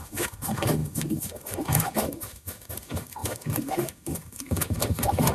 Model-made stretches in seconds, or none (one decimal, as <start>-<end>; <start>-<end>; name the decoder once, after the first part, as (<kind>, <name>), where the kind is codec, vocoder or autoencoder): 0.0-5.3 (autoencoder, DAC-VAE)

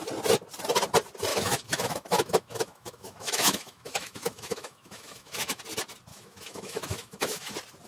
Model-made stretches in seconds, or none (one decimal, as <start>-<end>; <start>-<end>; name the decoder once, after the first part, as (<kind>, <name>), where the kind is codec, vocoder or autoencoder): 1.3-5.6 (autoencoder, DAC-VAE); 6.1-7.5